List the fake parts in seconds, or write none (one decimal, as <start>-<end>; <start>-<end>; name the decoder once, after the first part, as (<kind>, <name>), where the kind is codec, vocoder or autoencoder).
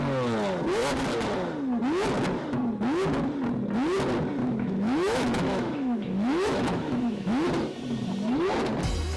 4.4-7.5 (autoencoder, DAC-VAE)